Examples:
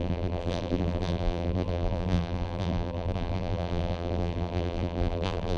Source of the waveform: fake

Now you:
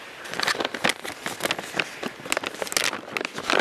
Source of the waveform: real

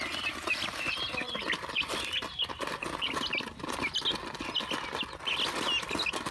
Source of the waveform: real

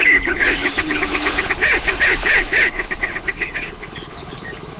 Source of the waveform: fake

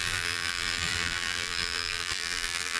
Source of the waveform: fake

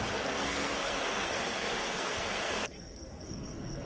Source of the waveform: fake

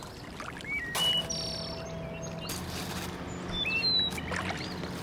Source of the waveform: real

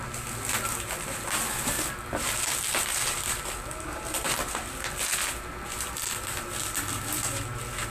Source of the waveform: real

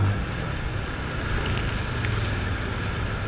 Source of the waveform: real